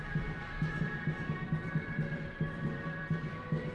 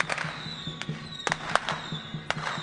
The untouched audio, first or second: second